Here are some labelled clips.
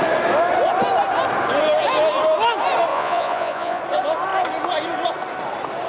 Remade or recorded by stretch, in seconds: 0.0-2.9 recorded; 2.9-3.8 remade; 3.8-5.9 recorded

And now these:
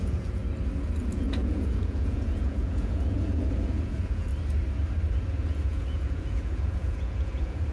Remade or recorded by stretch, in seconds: 0.0-0.4 remade; 0.4-1.0 recorded; 1.0-4.3 remade; 4.3-5.3 recorded; 5.3-7.7 remade